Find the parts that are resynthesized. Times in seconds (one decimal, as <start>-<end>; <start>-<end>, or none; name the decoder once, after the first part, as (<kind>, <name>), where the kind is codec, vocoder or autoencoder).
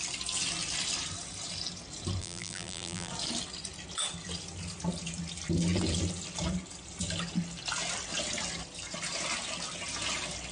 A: 2.2-3.1 (vocoder, BigVGAN v2)